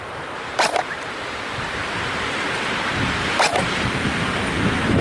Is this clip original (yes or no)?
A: no